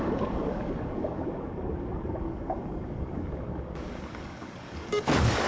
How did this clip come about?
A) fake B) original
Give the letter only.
A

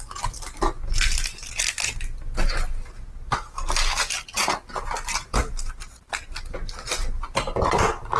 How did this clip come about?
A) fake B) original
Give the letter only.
B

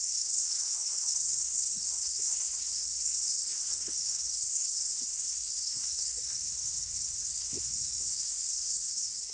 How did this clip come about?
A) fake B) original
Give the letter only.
A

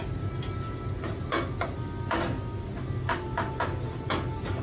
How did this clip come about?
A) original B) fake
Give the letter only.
A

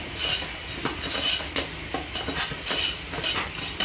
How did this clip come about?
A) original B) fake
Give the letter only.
A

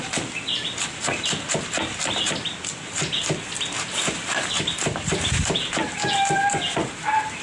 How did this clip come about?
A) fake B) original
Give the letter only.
B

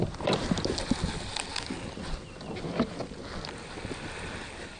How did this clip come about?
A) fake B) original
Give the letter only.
B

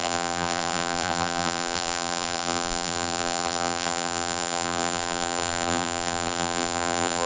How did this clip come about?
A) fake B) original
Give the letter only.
A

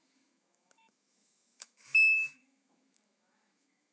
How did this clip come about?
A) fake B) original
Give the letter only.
A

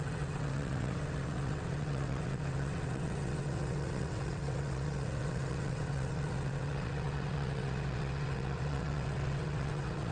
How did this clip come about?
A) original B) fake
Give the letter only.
B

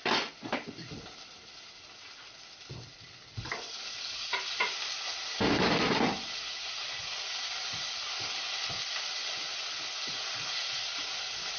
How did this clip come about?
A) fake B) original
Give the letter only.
B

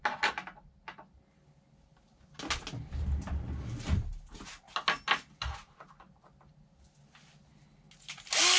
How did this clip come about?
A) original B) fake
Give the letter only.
A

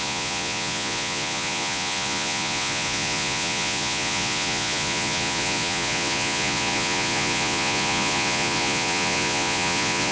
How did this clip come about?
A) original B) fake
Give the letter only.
B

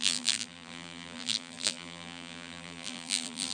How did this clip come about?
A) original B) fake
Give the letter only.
B